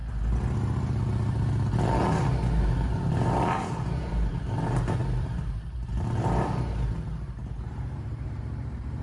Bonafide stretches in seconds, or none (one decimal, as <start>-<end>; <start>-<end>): 0.0-2.6